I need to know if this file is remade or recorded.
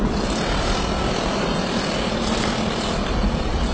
recorded